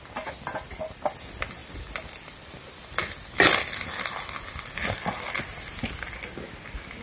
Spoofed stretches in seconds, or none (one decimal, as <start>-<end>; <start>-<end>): 1.6-4.0